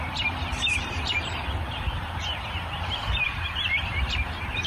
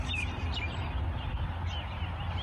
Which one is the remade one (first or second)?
first